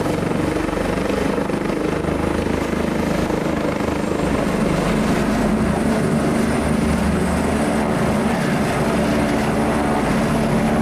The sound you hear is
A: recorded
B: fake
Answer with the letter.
A